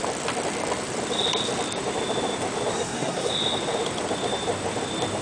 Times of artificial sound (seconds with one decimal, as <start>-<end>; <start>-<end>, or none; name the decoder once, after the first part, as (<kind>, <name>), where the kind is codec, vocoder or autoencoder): 2.7-3.3 (codec, SNAC)